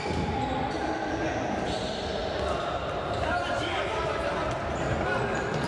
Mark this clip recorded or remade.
recorded